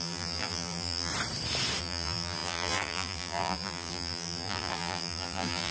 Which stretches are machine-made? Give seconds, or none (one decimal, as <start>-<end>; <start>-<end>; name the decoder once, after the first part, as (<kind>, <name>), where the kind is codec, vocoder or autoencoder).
0.0-1.1 (vocoder, BigVGAN v2); 1.8-5.7